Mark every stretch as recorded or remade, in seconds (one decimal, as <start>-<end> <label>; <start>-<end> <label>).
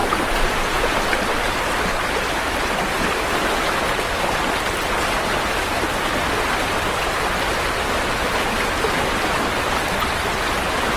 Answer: 0.0-1.0 remade; 1.0-11.0 recorded